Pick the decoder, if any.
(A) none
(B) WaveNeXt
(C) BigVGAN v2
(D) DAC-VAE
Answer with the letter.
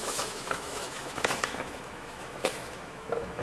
D